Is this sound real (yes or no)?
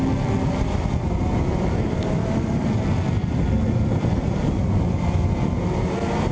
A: yes